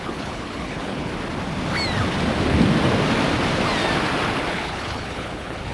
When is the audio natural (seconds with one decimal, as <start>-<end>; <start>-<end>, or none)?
1.1-4.5

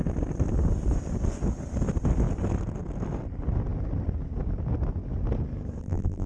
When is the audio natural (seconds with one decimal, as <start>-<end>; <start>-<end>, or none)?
0.0-5.8

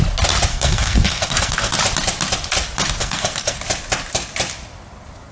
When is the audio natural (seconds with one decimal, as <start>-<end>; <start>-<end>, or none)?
0.0-0.5; 1.7-3.0; 3.6-5.3

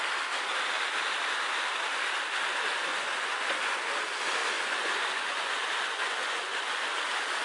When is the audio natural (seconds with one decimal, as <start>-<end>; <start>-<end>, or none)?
0.0-2.9; 3.9-4.4; 6.9-7.4

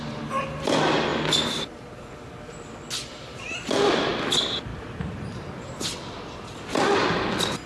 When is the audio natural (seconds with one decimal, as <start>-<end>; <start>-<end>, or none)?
0.0-4.7; 5.5-7.7